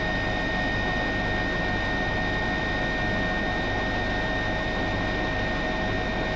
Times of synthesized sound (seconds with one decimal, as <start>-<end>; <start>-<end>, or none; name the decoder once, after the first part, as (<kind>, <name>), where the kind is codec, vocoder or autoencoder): none